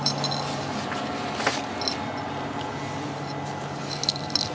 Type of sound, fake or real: real